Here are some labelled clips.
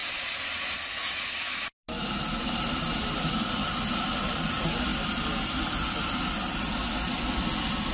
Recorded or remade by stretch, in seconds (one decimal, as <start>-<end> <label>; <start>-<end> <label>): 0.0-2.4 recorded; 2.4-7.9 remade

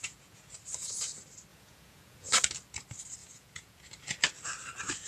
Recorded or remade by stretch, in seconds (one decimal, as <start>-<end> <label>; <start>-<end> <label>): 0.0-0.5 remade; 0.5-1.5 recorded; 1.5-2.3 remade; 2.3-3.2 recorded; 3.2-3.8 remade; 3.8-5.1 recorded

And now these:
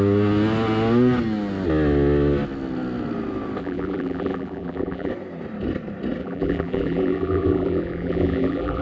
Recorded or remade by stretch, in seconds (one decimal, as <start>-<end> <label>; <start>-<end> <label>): 0.0-3.6 recorded; 3.6-5.1 remade; 5.1-6.2 recorded; 6.2-8.8 remade